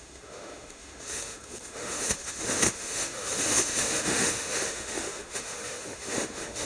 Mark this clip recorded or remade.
remade